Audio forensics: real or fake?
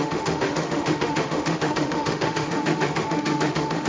fake